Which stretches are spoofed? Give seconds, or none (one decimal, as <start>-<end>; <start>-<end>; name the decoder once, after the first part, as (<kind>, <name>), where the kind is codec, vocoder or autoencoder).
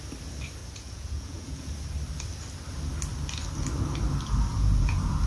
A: 0.6-1.6 (vocoder, Vocos); 4.5-5.3